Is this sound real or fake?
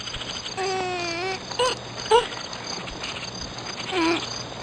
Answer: real